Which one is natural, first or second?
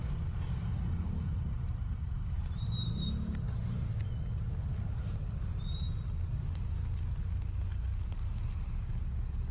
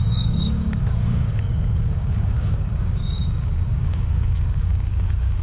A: first